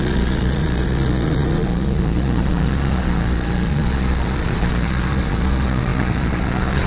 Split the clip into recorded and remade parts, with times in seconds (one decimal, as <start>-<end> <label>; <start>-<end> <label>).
0.0-6.9 remade